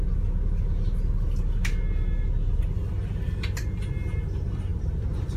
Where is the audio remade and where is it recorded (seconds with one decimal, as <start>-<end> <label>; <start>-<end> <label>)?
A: 0.0-4.7 recorded; 4.7-5.4 remade

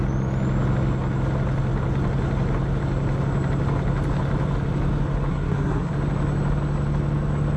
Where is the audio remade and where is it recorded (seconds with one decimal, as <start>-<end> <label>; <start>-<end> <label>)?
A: 0.0-5.3 recorded; 5.3-5.9 remade; 5.9-7.6 recorded

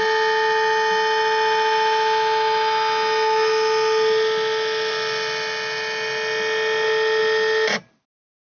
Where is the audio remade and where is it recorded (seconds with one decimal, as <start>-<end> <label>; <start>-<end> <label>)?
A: 0.0-8.4 recorded

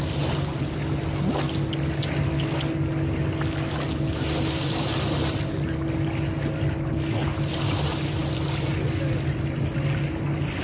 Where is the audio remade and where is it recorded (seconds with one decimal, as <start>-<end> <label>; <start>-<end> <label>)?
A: 0.0-10.6 recorded

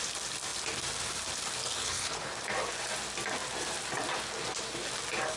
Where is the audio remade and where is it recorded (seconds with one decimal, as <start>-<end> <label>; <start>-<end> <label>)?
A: 0.0-1.8 recorded; 1.8-2.3 remade; 2.3-5.4 recorded